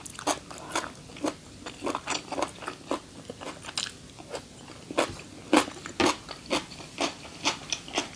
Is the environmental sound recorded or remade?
recorded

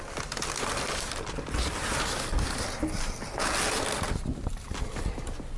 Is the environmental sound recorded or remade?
recorded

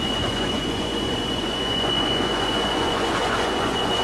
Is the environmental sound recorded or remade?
remade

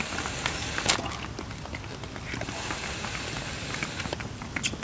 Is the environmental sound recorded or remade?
recorded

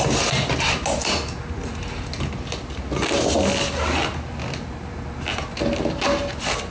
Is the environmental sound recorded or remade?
recorded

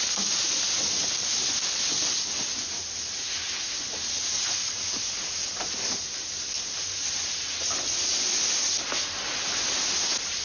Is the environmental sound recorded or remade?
recorded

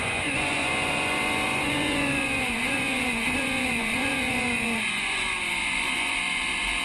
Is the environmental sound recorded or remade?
remade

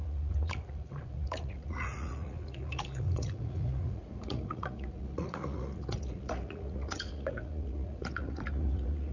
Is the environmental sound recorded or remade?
remade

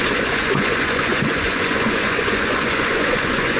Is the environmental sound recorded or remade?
remade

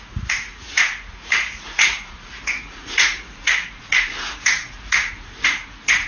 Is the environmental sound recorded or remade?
remade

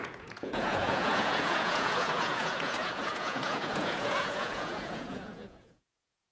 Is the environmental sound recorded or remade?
remade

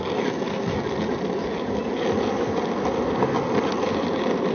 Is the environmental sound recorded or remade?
recorded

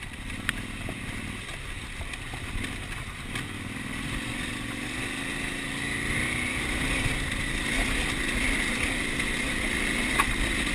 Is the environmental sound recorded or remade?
recorded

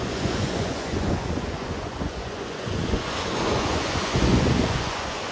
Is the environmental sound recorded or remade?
remade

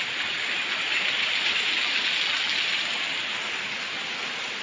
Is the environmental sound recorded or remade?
recorded